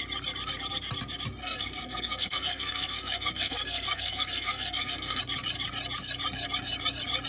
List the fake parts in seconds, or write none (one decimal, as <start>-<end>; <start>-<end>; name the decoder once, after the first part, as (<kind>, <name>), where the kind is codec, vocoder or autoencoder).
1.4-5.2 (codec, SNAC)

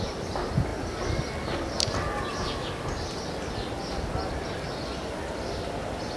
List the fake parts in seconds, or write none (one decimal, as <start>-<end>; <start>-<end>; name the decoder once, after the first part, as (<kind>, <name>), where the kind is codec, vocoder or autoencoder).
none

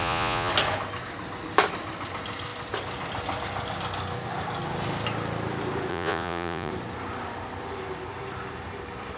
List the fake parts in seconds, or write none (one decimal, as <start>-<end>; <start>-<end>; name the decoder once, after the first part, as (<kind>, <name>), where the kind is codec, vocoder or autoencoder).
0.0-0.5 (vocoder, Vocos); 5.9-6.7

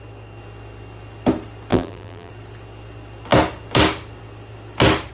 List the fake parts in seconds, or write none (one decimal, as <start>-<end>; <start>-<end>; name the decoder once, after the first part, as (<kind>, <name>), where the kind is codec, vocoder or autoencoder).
1.7-2.3 (vocoder, BigVGAN v2)